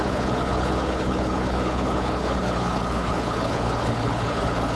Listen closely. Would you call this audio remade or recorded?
remade